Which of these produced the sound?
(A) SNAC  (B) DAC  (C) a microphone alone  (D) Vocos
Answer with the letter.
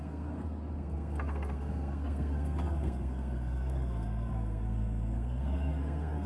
A